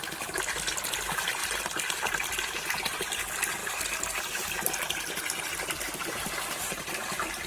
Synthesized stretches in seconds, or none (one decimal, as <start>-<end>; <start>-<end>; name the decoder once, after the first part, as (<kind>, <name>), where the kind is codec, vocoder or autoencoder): none